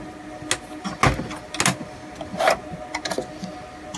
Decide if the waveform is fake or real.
real